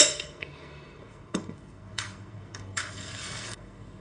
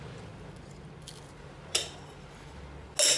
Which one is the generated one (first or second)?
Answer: first